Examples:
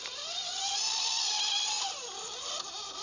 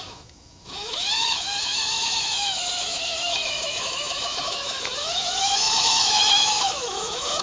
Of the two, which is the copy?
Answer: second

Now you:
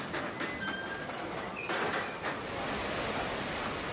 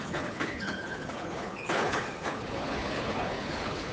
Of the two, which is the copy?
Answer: second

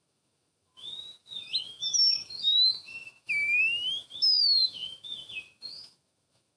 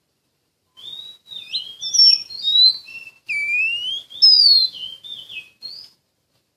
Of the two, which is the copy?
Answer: first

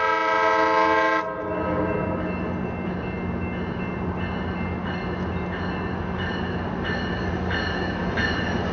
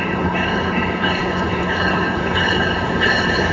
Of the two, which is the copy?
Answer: second